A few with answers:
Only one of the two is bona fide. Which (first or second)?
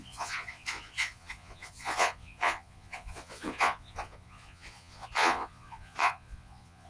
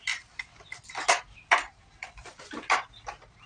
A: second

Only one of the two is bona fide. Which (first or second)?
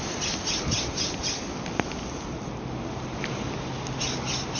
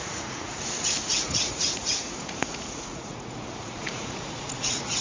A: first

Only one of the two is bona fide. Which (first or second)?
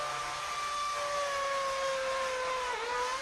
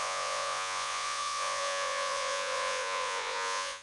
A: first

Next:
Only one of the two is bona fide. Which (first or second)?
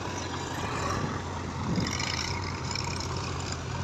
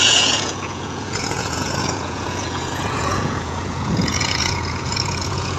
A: first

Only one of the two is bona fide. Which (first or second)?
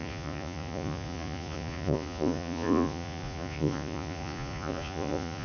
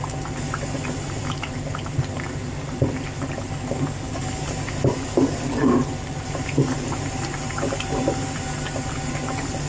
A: second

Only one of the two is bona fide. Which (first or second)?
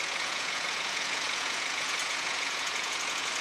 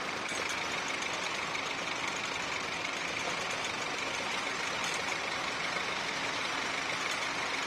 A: second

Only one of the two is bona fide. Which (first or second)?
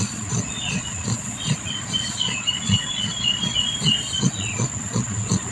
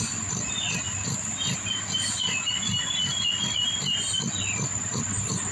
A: second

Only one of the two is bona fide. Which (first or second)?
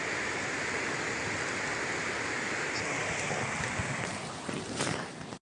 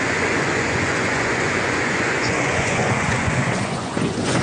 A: first